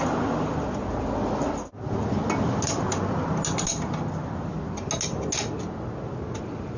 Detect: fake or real real